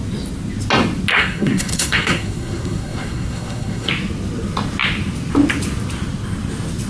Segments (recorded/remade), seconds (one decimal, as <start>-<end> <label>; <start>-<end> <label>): 0.0-1.1 recorded; 1.1-3.9 remade; 3.9-6.9 recorded